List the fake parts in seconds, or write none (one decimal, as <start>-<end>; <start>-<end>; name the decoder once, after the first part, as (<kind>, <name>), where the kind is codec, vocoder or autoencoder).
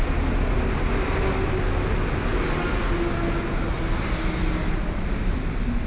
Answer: none